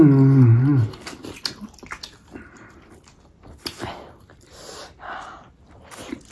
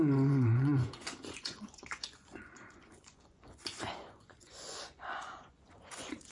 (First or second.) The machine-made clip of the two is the second